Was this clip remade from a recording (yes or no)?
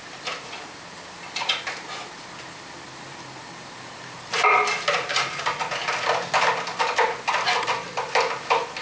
no